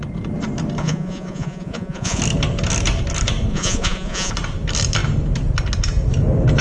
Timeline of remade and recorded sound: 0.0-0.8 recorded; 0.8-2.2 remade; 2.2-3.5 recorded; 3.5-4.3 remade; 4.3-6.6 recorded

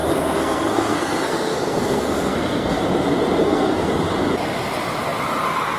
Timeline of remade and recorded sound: 0.0-2.8 remade; 2.8-3.4 recorded; 3.4-3.9 remade; 3.9-5.8 recorded

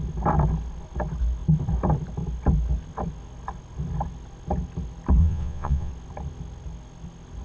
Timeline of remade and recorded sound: 0.0-5.2 recorded; 5.2-5.9 remade; 5.9-7.4 recorded

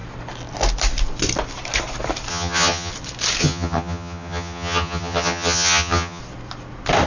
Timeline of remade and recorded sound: 0.0-2.3 recorded; 2.3-2.9 remade; 2.9-3.4 recorded; 3.4-6.2 remade; 6.2-7.1 recorded

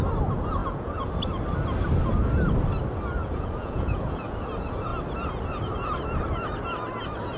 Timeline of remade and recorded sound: 0.0-0.6 recorded; 0.6-1.2 remade; 1.2-3.2 recorded; 3.2-4.4 remade; 4.4-7.4 recorded